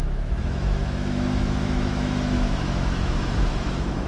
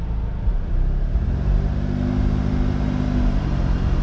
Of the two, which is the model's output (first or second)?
first